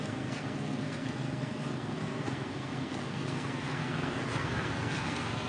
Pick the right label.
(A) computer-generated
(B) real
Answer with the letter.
A